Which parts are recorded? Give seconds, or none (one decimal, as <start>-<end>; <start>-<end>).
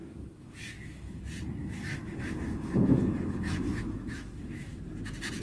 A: 1.2-1.6; 4.8-5.4